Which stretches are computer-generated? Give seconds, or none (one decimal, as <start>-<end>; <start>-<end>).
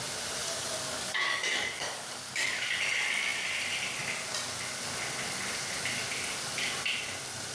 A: 0.4-2.7